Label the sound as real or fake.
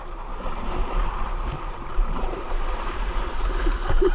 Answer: fake